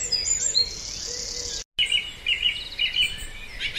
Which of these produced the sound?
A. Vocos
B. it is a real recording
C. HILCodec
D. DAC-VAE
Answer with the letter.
B